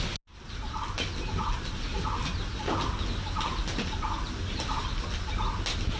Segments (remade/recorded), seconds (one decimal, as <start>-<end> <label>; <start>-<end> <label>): 0.0-6.0 recorded